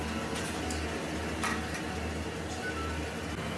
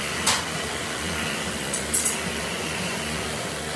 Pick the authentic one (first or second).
first